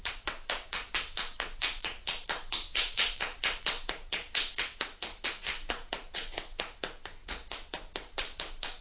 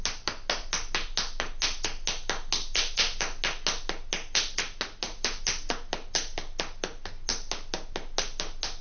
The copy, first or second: first